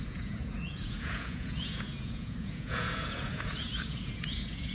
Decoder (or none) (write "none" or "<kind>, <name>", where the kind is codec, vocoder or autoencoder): vocoder, Vocos